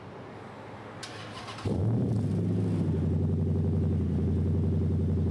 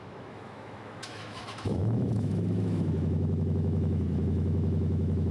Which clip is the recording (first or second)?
first